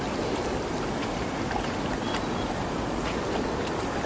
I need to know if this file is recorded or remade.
recorded